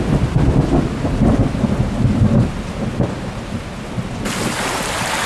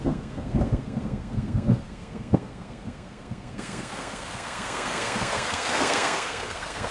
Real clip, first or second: first